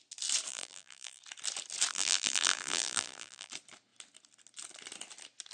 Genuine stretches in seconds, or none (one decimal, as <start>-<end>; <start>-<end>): 0.0-0.5; 1.2-1.9; 3.5-5.5